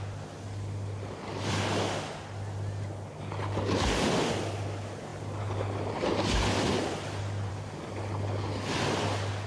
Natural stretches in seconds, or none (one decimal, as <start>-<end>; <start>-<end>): 0.0-9.5